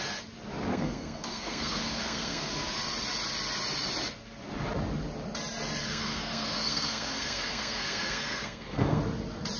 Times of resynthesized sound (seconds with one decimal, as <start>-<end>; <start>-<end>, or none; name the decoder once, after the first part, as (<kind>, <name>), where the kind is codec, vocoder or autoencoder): 0.7-2.5 (codec, SNAC); 5.8-9.0